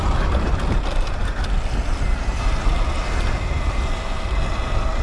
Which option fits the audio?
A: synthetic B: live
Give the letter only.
B